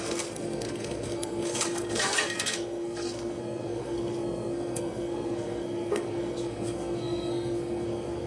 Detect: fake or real fake